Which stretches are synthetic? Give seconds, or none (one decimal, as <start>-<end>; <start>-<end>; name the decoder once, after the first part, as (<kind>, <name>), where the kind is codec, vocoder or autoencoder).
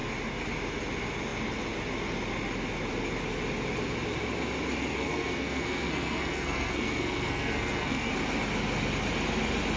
4.9-8.1 (codec, SNAC)